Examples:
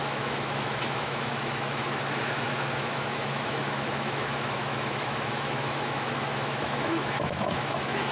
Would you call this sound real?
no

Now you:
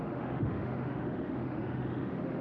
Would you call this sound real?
no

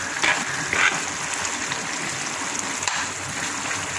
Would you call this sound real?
yes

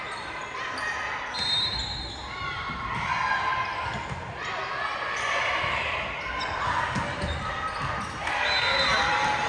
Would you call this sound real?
yes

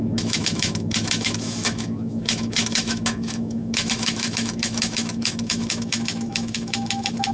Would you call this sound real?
no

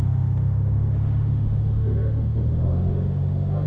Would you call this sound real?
no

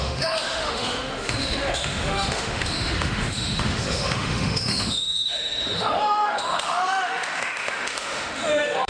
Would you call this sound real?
no